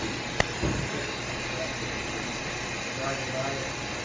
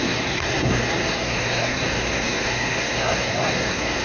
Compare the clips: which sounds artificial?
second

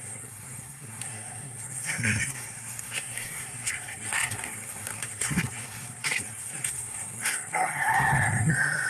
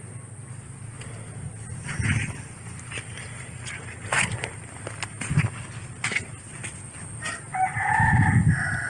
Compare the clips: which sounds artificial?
first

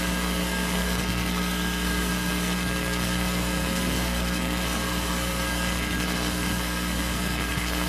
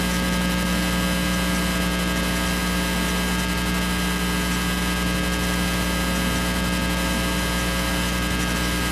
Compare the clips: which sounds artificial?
first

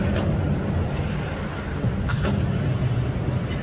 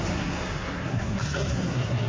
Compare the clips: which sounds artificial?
second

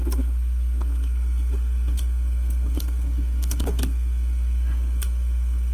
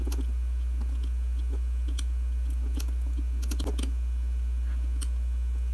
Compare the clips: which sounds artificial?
first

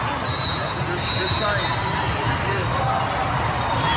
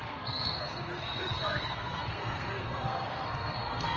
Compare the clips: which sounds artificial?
second